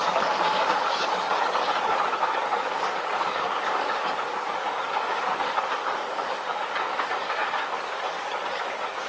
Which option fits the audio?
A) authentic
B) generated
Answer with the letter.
B